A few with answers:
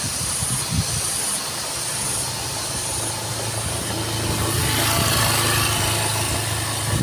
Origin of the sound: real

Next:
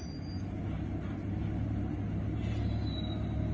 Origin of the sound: real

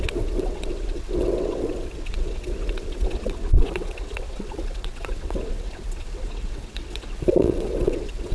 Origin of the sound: fake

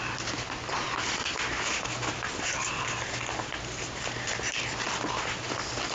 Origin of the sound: real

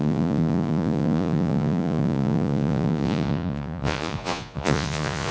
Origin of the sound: fake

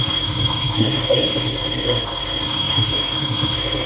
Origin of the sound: fake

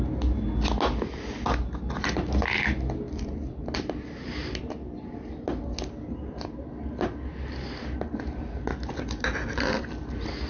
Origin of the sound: real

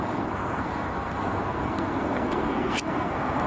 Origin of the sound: fake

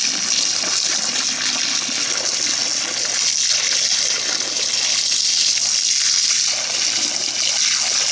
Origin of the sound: real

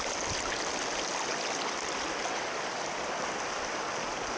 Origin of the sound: real